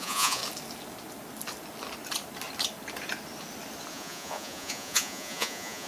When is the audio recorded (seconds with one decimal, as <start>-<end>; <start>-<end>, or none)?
0.4-3.9